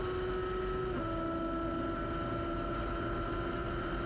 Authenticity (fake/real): real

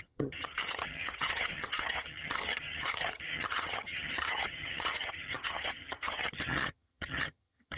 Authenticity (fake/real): fake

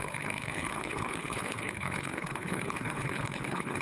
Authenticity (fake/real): fake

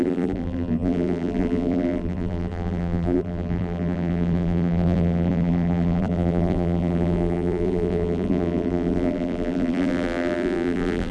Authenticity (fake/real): fake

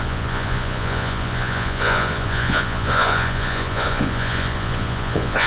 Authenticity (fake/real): fake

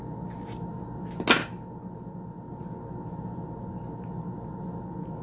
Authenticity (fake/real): real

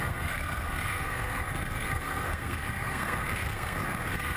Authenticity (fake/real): fake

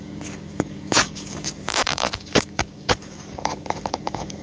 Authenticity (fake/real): fake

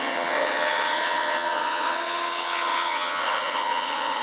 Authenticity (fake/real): fake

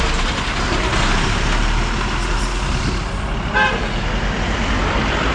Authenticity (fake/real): real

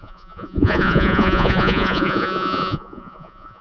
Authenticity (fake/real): fake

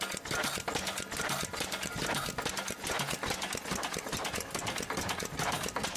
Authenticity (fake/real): real